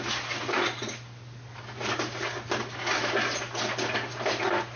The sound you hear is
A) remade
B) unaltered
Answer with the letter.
B